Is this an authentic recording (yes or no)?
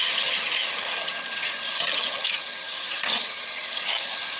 no